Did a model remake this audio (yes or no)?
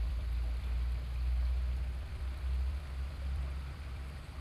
yes